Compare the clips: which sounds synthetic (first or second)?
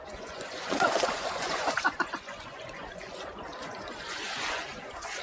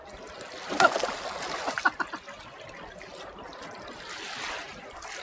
first